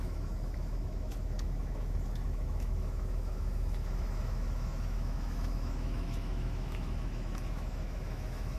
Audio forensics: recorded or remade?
remade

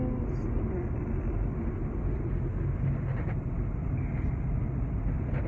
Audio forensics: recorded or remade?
recorded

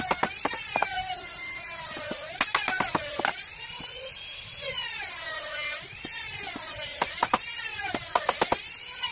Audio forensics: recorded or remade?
recorded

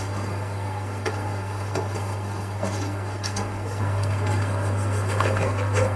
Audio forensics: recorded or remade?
remade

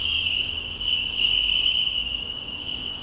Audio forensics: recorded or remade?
remade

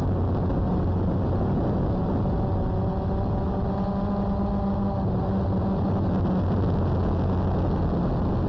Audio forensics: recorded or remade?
recorded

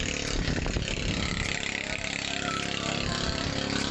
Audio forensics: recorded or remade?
recorded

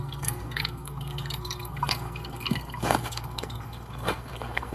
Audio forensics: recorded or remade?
remade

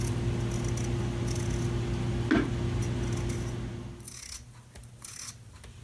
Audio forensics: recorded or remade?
recorded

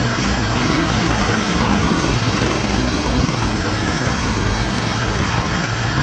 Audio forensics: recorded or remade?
remade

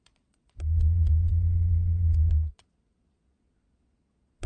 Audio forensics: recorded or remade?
remade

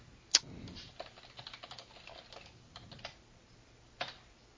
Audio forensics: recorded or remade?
recorded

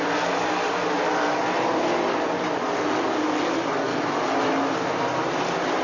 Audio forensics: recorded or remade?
recorded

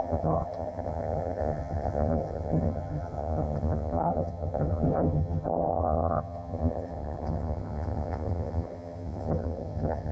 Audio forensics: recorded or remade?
remade